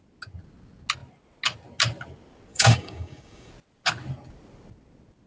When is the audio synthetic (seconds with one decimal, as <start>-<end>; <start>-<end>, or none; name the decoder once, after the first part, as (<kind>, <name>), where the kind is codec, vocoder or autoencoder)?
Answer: 2.5-3.5 (codec, DAC)